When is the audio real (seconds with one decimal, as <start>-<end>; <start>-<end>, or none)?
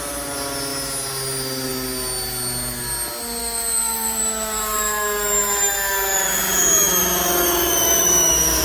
0.0-3.4